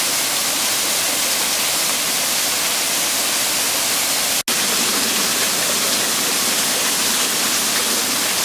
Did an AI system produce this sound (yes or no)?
no